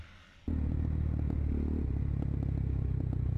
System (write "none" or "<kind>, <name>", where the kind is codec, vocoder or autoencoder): none